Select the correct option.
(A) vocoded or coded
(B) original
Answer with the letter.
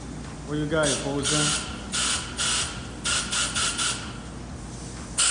B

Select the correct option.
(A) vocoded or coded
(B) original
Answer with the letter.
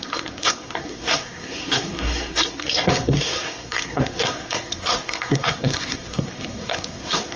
A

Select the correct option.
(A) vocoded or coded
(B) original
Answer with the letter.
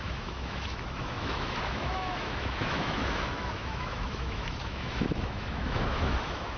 A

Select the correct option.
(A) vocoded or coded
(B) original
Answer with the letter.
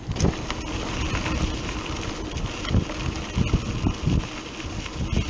B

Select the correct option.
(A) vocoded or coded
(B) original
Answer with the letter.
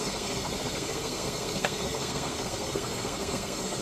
A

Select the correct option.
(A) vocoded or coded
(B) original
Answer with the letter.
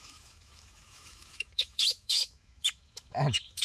A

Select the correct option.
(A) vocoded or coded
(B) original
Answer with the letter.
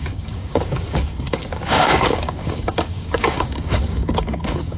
A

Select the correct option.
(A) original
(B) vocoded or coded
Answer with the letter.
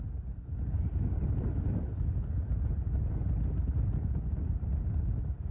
A